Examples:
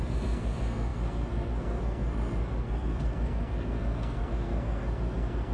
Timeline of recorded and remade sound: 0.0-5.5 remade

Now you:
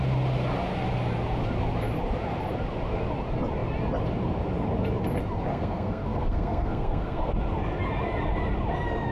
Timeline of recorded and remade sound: 0.0-5.5 recorded; 5.5-7.3 remade; 7.3-9.1 recorded

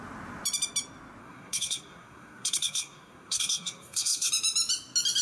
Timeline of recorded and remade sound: 0.0-1.2 recorded; 1.2-4.3 remade; 4.3-5.2 recorded

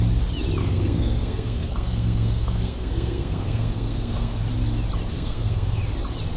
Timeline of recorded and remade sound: 0.0-0.6 recorded; 0.6-4.4 remade; 4.4-5.1 recorded; 5.1-5.8 remade; 5.8-6.4 recorded

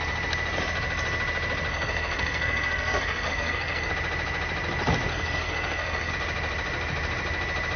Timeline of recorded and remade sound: 0.0-1.7 recorded; 1.7-3.9 remade; 3.9-5.1 recorded; 5.1-6.1 remade; 6.1-7.8 recorded